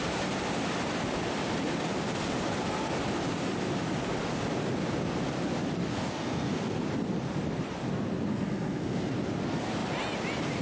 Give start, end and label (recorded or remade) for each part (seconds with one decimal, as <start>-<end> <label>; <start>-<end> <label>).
0.0-5.9 recorded; 5.9-6.8 remade; 6.8-8.3 recorded; 8.3-9.1 remade; 9.1-10.6 recorded